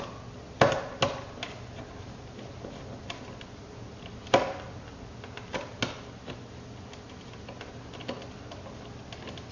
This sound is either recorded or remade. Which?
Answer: recorded